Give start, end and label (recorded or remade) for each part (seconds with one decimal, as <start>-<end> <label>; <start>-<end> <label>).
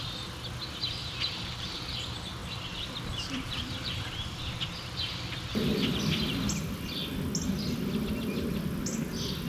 0.0-2.4 recorded; 2.4-6.0 remade; 6.0-9.5 recorded